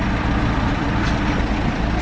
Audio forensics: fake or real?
fake